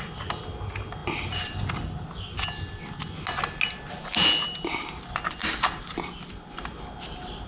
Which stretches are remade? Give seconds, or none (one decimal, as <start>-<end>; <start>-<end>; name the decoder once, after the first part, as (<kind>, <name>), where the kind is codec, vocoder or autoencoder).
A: none